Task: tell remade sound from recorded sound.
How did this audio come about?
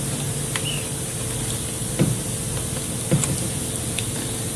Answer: recorded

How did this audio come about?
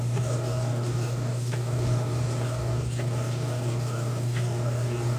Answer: remade